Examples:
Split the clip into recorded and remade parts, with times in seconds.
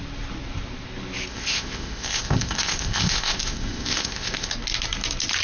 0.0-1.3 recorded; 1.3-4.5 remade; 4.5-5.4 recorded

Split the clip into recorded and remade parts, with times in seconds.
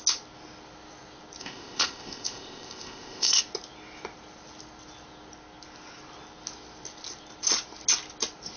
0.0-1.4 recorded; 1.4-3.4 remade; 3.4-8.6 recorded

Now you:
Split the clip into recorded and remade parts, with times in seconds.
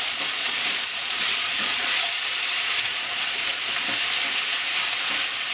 0.0-0.4 recorded; 0.4-3.7 remade; 3.7-5.5 recorded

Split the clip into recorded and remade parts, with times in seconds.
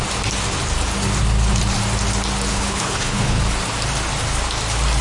0.0-2.5 recorded; 2.5-3.4 remade; 3.4-5.0 recorded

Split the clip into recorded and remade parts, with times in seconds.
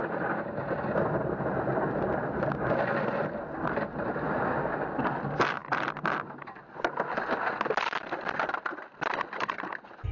0.0-10.1 recorded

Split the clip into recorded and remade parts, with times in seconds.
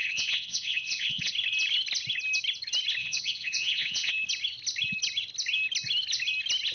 0.0-1.3 remade; 1.3-3.0 recorded; 3.0-4.1 remade; 4.1-6.7 recorded